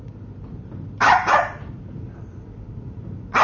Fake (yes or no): yes